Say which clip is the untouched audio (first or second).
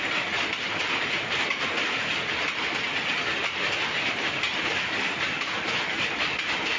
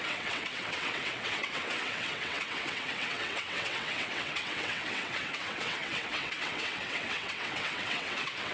first